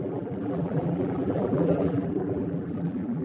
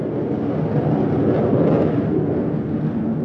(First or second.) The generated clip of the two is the first